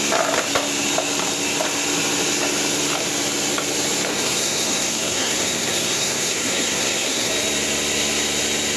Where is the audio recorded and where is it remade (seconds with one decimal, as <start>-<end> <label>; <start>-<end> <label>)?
0.0-4.1 recorded; 4.1-7.3 remade; 7.3-8.8 recorded